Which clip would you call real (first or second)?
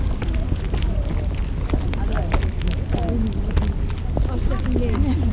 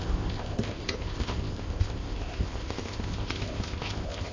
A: first